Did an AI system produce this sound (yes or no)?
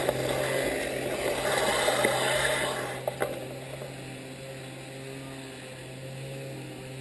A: no